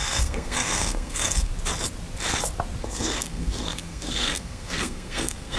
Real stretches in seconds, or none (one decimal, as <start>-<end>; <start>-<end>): 1.5-2.8